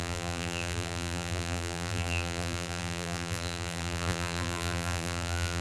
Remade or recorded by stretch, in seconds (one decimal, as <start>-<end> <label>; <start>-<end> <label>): 0.0-5.6 remade